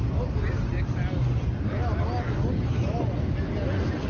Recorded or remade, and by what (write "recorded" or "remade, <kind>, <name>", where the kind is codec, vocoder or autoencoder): recorded